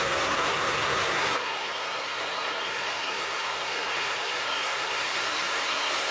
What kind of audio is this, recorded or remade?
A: remade